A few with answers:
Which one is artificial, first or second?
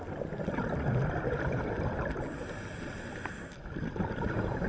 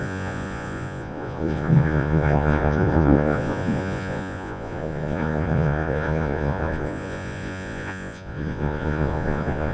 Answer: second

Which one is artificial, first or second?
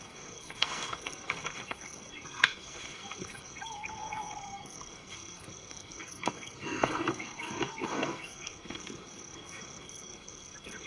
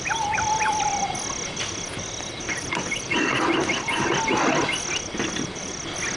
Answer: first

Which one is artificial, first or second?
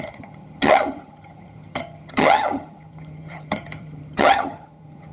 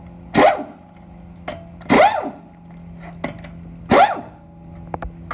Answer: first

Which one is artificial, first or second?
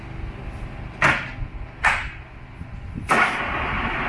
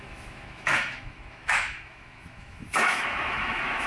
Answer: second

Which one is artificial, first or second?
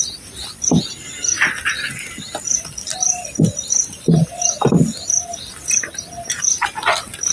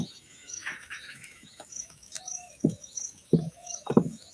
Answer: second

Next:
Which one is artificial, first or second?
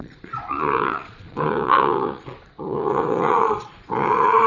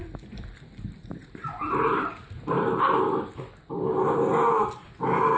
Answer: first